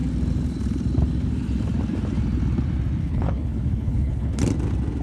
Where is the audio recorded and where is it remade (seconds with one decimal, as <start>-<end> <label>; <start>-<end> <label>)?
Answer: 0.0-3.0 recorded; 3.0-4.4 remade; 4.4-5.0 recorded